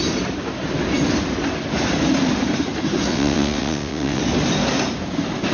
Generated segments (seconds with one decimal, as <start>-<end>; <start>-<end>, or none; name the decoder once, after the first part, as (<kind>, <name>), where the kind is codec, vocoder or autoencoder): 3.1-4.2 (vocoder, WaveNeXt)